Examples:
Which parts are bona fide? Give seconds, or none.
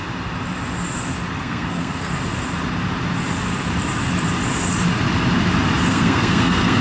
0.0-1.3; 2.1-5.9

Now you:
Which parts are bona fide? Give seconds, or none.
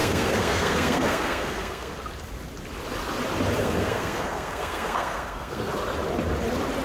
1.9-3.6; 5.7-6.8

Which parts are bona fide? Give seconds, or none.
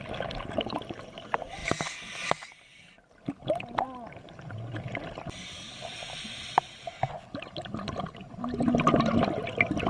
0.0-9.9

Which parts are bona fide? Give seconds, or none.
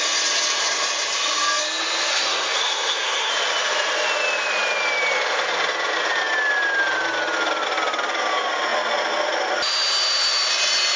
0.0-2.1; 3.3-11.0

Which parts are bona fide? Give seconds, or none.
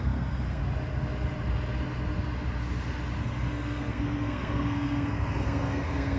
0.6-3.2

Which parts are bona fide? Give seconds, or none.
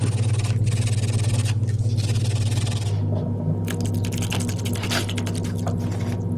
0.0-6.4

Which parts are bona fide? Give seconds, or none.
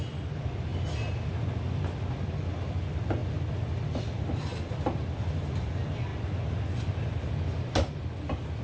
0.0-8.6